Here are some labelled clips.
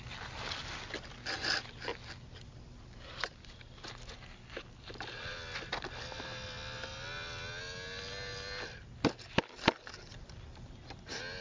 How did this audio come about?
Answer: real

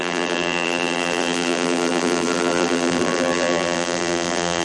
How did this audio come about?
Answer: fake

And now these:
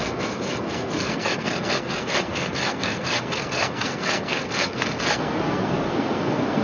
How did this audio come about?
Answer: fake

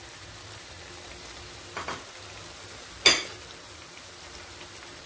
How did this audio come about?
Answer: real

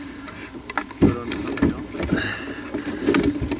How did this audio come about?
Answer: real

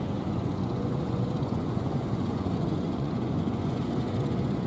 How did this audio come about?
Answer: fake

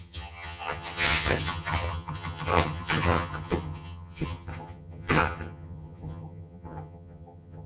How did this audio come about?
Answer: fake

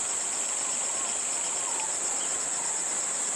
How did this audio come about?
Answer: real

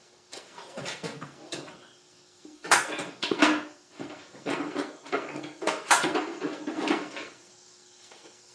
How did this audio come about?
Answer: fake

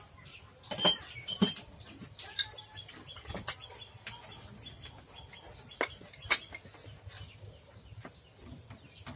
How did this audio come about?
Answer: real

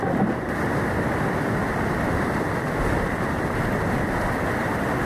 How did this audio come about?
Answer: real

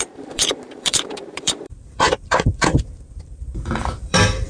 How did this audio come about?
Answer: fake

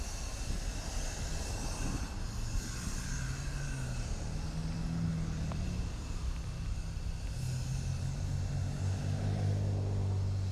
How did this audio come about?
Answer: real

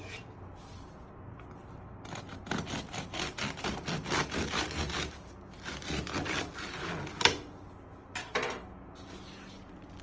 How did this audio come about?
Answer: real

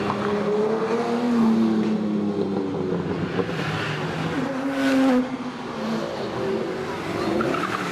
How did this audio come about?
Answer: real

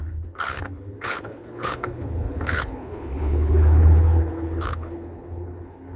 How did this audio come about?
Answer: fake